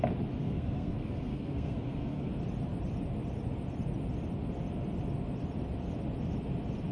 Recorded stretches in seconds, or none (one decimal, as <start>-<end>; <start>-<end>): 0.0-0.4; 2.3-6.9